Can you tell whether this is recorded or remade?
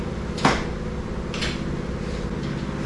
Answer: recorded